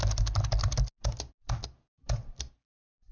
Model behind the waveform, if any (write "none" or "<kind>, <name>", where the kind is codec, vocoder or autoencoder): none